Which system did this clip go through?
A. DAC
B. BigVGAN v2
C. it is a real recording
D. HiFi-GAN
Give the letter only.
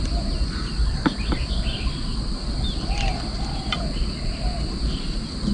C